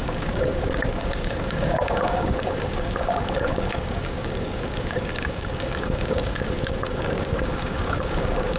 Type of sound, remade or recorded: remade